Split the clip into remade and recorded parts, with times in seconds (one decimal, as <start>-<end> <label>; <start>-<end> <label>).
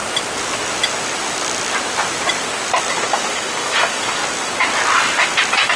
0.0-2.9 recorded; 2.9-4.2 remade; 4.2-5.8 recorded